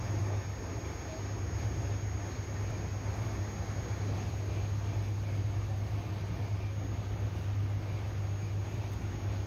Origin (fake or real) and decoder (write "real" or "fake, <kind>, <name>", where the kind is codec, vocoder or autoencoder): real